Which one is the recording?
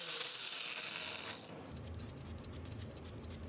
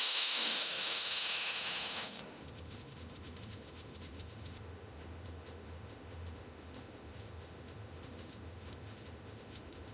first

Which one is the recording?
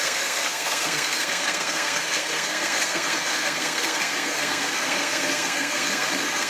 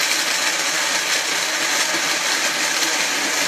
second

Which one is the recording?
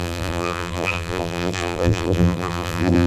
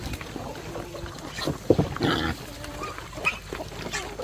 second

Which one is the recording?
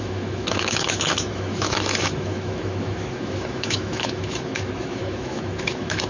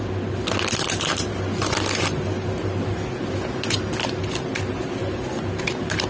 second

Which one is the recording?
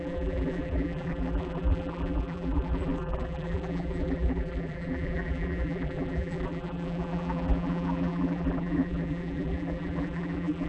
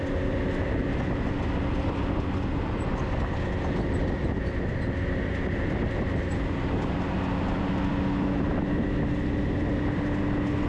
second